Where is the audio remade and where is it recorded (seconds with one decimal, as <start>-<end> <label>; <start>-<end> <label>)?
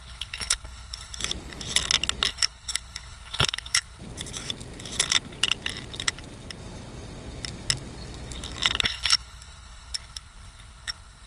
0.0-1.2 remade; 1.2-2.3 recorded; 2.3-4.0 remade; 4.0-8.8 recorded; 8.8-11.3 remade